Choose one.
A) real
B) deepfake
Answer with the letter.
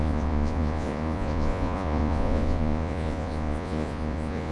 B